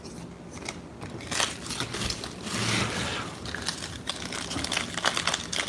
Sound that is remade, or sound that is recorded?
recorded